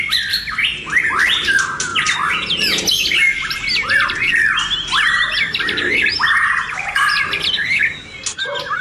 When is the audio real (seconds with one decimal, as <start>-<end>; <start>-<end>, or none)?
0.0-8.8